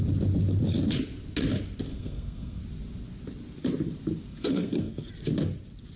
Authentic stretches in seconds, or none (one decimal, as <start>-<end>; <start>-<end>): 0.0-1.9; 2.6-4.3; 5.1-6.0